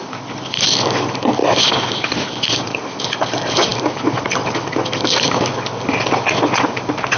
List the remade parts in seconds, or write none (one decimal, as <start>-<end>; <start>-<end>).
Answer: none